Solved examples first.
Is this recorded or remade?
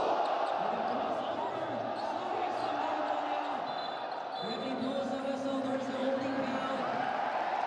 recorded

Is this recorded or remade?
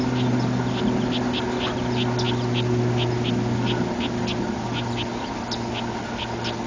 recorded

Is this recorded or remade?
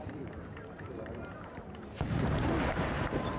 remade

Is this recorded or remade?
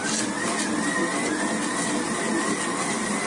recorded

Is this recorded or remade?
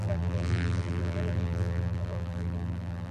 remade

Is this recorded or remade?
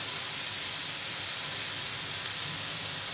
remade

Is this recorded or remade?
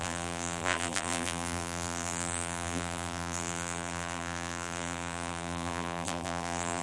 remade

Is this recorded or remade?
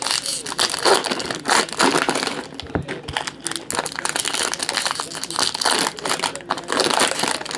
recorded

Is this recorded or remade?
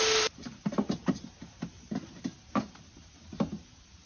remade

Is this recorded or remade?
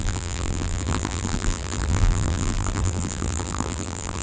remade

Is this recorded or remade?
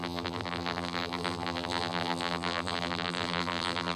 remade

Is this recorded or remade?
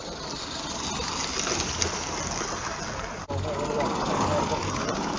recorded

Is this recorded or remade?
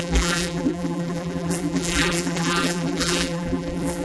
remade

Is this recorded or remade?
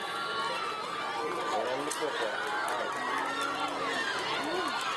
recorded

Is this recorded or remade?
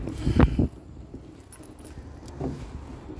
recorded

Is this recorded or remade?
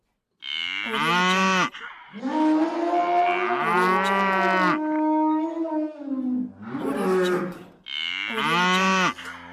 recorded